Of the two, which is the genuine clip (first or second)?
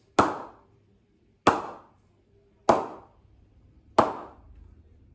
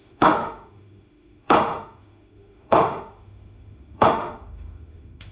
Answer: first